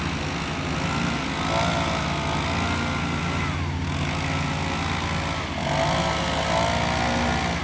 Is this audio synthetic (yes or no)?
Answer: no